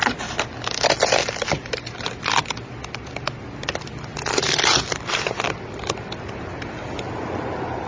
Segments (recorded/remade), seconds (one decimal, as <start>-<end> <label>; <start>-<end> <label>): 0.0-7.9 recorded